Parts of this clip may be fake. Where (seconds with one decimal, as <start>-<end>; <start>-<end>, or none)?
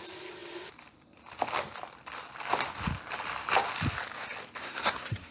4.6-5.3